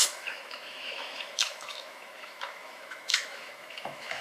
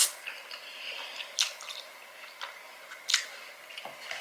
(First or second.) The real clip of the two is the second